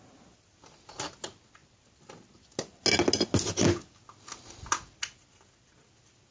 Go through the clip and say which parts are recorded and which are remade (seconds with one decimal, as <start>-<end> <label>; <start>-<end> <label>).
0.0-6.3 recorded